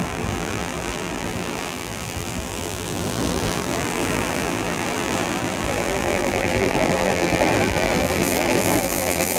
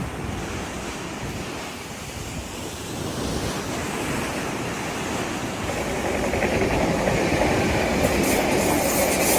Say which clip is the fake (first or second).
first